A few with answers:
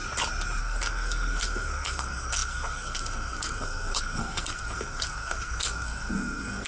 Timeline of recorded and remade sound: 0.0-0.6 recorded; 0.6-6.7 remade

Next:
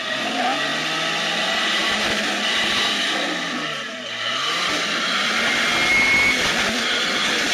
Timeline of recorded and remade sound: 0.0-7.5 recorded